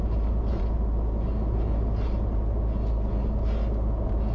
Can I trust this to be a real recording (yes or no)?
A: yes